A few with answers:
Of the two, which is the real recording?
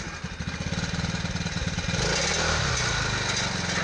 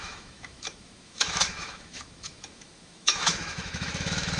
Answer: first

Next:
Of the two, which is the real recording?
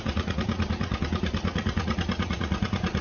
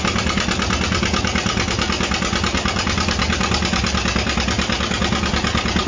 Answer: second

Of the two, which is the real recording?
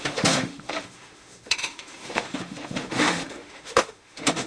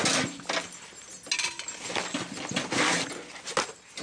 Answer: second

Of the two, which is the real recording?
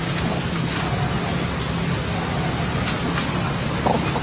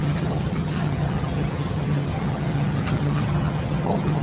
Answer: first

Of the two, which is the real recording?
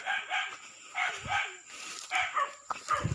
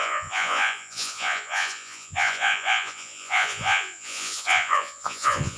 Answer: first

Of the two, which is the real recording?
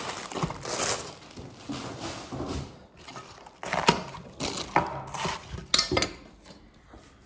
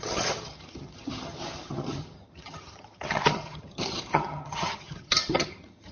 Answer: first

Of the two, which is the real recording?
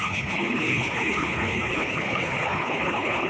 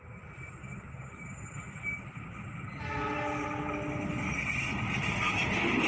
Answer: second